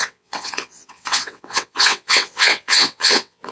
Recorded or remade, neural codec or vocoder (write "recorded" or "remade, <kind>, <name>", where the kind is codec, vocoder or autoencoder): remade, vocoder, WaveNeXt